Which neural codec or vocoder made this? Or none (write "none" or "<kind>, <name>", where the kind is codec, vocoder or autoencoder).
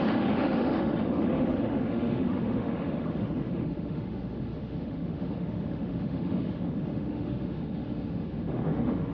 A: autoencoder, DAC-VAE